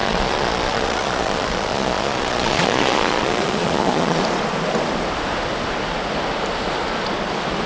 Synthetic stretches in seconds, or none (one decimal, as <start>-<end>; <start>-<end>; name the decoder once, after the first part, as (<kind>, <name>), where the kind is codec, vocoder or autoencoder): 0.0-4.2 (vocoder, Vocos)